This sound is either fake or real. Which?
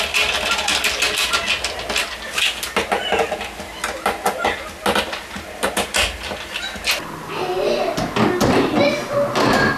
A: real